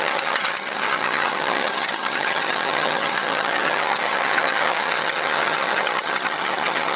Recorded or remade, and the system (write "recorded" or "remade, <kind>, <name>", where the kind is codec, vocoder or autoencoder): remade, vocoder, HiFi-GAN